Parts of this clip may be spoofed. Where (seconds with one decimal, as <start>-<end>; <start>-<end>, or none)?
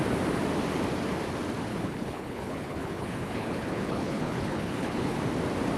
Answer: 1.7-5.2